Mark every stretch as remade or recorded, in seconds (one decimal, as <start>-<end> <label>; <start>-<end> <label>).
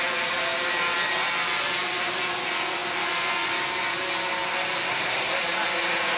0.0-4.9 recorded; 4.9-5.4 remade; 5.4-6.2 recorded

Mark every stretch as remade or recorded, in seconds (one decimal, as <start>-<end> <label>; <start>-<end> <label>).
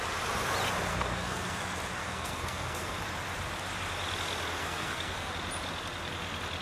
0.0-0.9 recorded; 0.9-1.6 remade; 1.6-2.0 recorded; 2.0-3.0 remade; 3.0-4.6 recorded; 4.6-5.3 remade; 5.3-6.6 recorded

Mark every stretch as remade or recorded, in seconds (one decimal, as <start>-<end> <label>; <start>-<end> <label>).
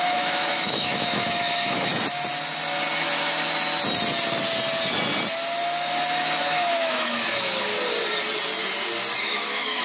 0.0-1.9 remade; 1.9-6.4 recorded; 6.4-7.7 remade; 7.7-9.2 recorded; 9.2-9.8 remade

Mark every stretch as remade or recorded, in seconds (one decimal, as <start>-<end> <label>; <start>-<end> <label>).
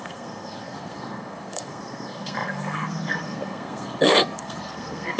0.0-5.2 remade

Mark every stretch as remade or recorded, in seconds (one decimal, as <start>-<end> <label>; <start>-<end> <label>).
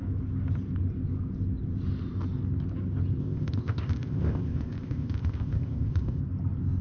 0.0-3.2 recorded; 3.2-6.2 remade; 6.2-6.8 recorded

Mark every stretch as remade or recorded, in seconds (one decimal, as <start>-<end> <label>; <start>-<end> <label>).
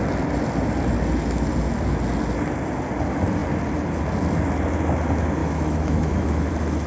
0.0-5.4 recorded; 5.4-6.5 remade; 6.5-6.9 recorded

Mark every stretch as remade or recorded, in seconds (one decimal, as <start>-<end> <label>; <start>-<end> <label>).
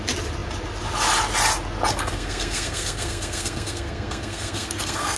0.0-1.9 recorded; 1.9-5.2 remade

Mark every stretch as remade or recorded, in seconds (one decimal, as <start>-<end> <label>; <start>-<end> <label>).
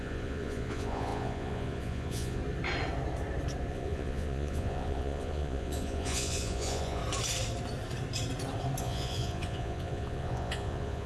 0.0-2.4 remade; 2.4-3.7 recorded; 3.7-7.0 remade; 7.0-8.8 recorded; 8.8-11.1 remade